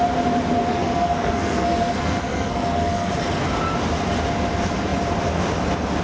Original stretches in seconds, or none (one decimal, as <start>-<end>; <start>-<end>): 0.0-0.7; 3.1-6.0